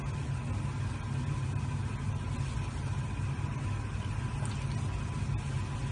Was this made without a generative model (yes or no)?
yes